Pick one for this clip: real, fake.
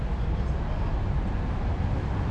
real